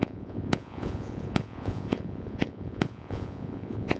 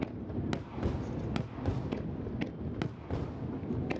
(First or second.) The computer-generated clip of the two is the first